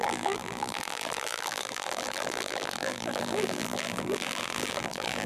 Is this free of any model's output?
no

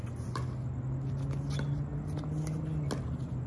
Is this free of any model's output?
yes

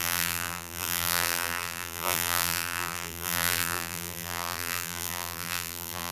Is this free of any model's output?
no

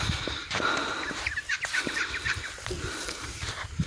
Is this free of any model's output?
no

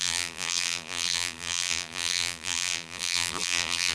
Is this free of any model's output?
no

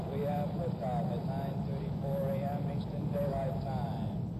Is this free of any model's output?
yes